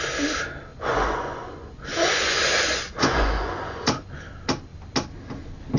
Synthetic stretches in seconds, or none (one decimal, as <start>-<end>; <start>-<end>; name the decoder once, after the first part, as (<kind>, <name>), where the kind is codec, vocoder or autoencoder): 0.7-4.2 (vocoder, Vocos)